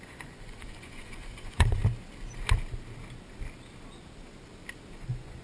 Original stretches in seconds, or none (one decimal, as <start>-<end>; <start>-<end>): 1.8-5.0